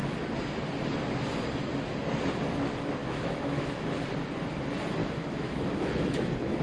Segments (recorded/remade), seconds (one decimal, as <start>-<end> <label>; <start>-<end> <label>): 0.0-3.0 recorded; 3.0-3.9 remade; 3.9-5.0 recorded; 5.0-6.6 remade